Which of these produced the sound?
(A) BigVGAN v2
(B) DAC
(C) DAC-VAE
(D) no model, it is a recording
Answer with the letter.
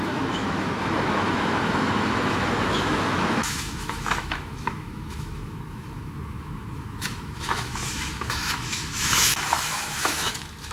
C